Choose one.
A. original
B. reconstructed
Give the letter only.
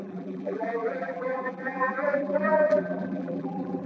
B